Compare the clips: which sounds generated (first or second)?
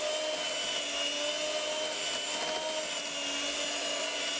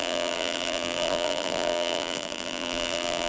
second